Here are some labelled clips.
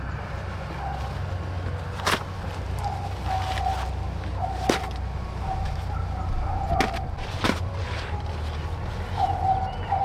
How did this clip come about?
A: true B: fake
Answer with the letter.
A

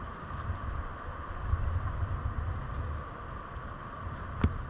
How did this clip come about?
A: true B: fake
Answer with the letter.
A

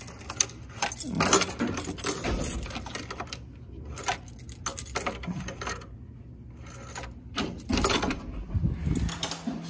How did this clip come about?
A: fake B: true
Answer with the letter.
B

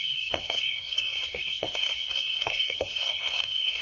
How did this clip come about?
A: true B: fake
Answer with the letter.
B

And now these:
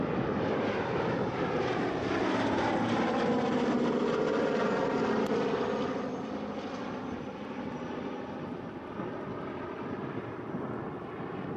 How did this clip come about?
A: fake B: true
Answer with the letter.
B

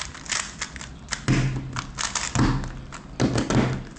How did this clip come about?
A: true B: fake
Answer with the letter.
A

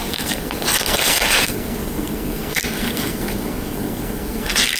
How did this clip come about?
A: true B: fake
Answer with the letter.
B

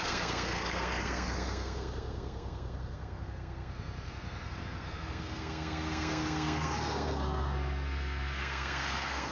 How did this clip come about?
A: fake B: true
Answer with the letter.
A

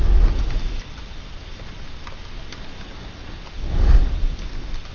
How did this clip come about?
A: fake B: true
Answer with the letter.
B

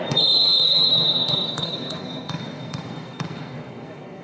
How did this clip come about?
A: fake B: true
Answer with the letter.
A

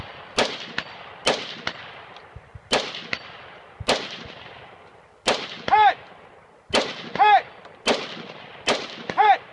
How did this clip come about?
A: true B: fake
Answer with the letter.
A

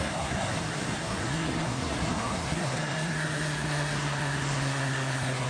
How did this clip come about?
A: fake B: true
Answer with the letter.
A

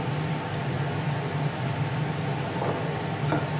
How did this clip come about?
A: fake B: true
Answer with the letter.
B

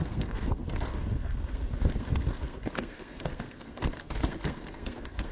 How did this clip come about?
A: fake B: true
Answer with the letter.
A